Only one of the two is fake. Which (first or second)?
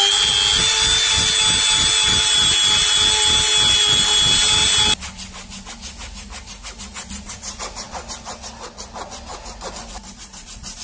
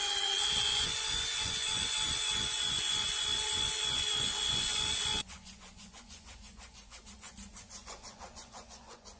second